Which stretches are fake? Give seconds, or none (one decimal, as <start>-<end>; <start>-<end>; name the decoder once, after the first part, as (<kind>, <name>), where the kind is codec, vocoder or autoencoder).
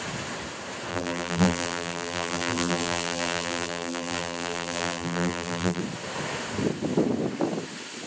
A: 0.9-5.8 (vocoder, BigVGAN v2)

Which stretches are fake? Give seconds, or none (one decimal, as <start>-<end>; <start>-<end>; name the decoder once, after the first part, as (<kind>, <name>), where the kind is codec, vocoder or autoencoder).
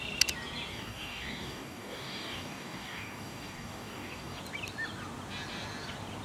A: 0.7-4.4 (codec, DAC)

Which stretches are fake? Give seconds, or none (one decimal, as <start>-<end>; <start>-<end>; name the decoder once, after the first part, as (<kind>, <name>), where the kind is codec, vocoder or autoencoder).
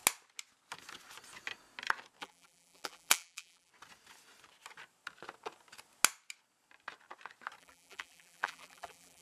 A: 2.2-3.7 (vocoder, BigVGAN v2); 7.6-9.2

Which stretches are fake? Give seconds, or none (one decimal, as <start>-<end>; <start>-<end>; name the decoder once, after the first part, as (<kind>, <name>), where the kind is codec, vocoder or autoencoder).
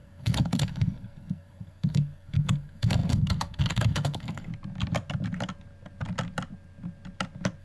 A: 0.0-4.5 (codec, SNAC)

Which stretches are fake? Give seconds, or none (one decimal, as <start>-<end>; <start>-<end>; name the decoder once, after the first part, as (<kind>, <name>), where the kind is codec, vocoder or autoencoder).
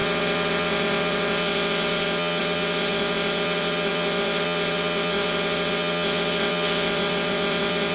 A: 0.0-7.9 (vocoder, WaveNeXt)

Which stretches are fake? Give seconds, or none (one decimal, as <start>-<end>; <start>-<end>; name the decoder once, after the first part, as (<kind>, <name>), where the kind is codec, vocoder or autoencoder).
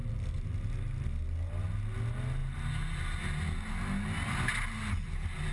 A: none